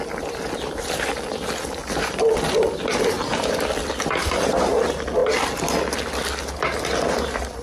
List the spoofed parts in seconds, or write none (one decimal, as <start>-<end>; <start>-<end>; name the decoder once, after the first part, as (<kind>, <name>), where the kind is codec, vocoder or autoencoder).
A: 1.8-2.8 (vocoder, BigVGAN v2); 3.3-4.4

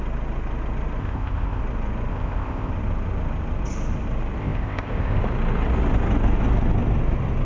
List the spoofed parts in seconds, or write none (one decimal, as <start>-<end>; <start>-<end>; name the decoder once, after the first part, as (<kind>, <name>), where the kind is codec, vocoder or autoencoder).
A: 1.0-1.6 (codec, ZipCodec); 2.1-2.7; 4.4-5.2

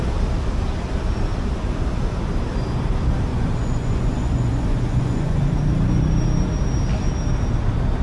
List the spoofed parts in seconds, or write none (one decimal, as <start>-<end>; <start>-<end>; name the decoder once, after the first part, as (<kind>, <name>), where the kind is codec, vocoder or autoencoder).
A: 3.3-5.4 (vocoder, Vocos)

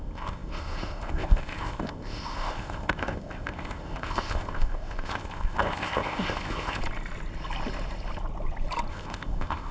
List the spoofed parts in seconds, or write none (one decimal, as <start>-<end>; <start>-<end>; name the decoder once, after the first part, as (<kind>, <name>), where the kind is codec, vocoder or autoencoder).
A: 0.0-6.8 (codec, ZipCodec); 8.9-9.7

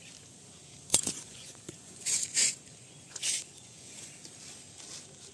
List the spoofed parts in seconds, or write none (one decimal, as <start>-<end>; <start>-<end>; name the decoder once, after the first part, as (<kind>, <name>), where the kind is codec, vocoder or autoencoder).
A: 0.9-4.1 (vocoder, Vocos)

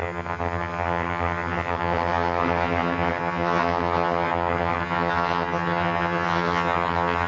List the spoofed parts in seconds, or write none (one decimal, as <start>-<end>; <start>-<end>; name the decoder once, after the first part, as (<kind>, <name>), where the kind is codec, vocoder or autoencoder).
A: 0.0-7.3 (vocoder, HiFi-GAN)

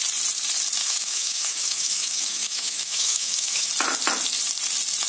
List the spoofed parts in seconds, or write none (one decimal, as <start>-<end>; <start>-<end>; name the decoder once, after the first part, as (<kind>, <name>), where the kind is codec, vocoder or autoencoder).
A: 0.8-3.7 (autoencoder, DAC-VAE)

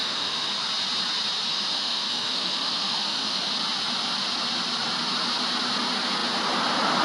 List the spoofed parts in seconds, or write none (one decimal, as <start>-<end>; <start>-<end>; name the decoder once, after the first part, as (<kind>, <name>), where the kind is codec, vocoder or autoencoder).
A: 0.0-0.5 (autoencoder, DAC-VAE); 1.5-3.5